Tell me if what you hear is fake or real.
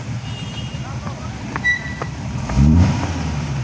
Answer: fake